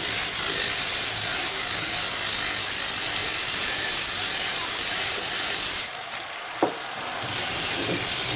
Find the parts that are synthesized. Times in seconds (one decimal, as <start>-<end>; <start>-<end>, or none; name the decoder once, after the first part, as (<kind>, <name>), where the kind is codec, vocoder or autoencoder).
3.2-8.0 (vocoder, BigVGAN v2)